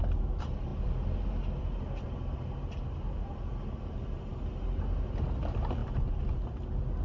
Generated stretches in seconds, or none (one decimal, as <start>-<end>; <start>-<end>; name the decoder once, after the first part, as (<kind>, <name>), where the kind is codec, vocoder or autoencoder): none